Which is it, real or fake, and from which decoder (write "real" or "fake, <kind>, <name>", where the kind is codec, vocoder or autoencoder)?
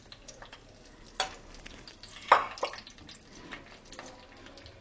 real